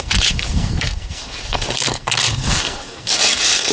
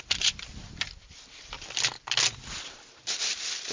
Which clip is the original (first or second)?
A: second